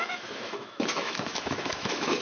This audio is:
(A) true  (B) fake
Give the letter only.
B